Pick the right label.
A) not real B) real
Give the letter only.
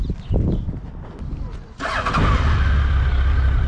B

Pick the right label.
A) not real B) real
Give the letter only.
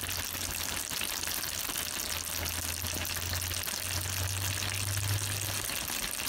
B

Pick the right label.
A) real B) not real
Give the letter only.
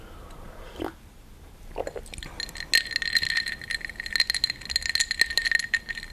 A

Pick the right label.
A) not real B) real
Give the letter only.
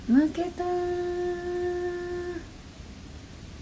B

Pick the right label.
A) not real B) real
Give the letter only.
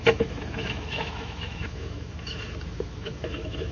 A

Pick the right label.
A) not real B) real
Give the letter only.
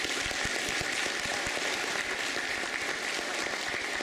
B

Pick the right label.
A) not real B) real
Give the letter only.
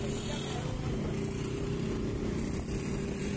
B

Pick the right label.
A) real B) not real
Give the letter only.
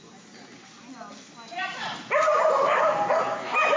A